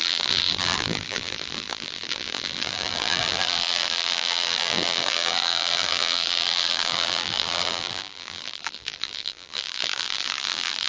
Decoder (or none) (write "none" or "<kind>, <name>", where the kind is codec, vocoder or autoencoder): vocoder, BigVGAN v2